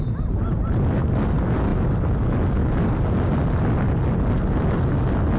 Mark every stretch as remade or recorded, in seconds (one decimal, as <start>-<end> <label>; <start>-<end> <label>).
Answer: 0.0-5.4 recorded